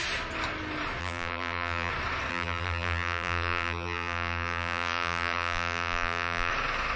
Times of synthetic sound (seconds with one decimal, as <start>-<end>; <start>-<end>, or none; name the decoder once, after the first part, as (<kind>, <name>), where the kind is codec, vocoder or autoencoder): 1.0-1.9 (vocoder, BigVGAN v2); 2.3-6.5